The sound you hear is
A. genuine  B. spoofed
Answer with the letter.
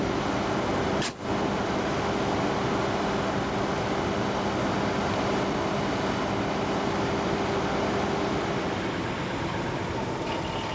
A